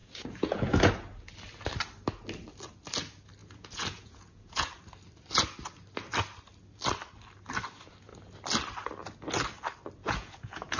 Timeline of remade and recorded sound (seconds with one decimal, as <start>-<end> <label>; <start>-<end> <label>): 0.0-0.9 remade; 0.9-3.4 recorded; 3.4-4.7 remade; 4.7-10.0 recorded; 10.0-10.8 remade